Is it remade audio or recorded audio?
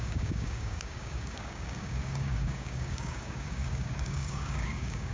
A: remade